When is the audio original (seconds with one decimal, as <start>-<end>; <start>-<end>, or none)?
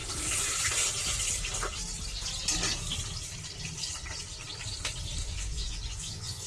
0.0-5.2